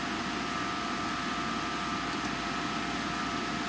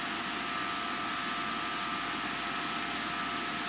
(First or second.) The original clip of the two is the second